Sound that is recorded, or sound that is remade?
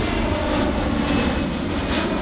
recorded